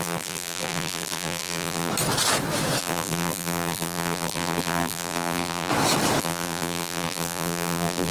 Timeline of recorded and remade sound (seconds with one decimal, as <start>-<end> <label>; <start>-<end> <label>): 0.0-1.9 remade; 1.9-2.8 recorded; 2.8-5.7 remade; 5.7-6.2 recorded; 6.2-8.1 remade